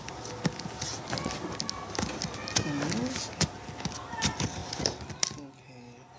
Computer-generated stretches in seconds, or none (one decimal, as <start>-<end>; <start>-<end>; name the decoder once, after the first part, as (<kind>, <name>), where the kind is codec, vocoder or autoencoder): none